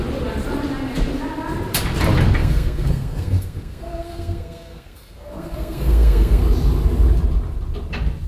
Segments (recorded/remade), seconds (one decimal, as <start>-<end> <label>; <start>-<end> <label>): 0.0-2.4 recorded; 2.4-6.4 remade; 6.4-8.3 recorded